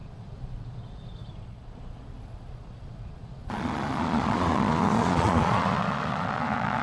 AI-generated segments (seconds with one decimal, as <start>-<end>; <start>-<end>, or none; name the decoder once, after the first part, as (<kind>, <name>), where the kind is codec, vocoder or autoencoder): 0.0-6.8 (vocoder, Vocos)